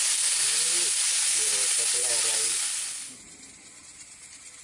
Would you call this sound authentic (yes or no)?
yes